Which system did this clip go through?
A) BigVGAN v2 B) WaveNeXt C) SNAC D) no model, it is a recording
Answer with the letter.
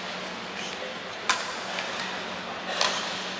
D